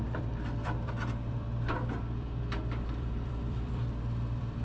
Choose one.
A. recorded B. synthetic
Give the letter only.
B